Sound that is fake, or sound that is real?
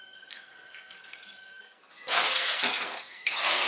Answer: fake